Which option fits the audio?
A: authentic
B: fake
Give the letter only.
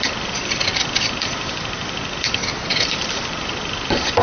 B